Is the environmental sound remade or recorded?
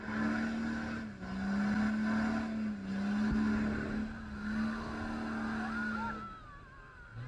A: recorded